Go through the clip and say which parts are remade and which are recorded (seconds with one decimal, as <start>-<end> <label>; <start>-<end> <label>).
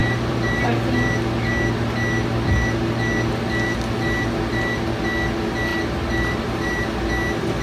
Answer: 0.0-0.6 remade; 0.6-5.7 recorded; 5.7-6.9 remade; 6.9-7.6 recorded